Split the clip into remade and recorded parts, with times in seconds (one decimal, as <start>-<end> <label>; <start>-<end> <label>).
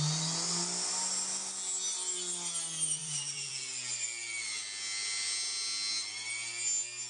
0.0-3.0 recorded; 3.0-3.5 remade; 3.5-7.1 recorded